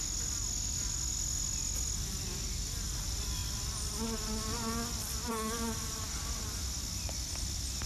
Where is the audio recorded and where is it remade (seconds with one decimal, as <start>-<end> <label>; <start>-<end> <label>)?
0.0-7.9 recorded